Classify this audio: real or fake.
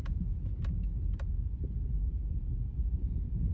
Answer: real